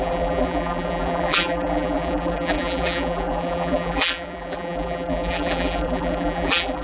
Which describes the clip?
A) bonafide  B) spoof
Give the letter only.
B